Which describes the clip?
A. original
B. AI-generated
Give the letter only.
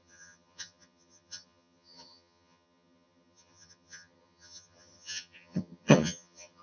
B